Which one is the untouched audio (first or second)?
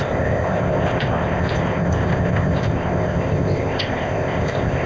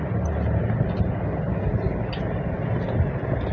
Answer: second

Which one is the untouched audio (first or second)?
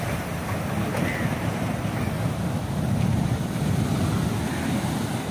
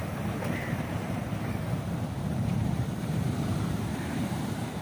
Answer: first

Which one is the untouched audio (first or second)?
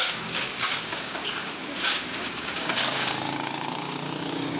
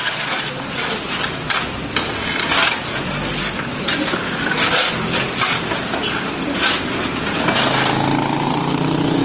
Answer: second